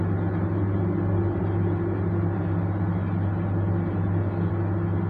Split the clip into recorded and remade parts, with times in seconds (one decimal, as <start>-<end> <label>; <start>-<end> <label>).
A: 0.0-5.1 recorded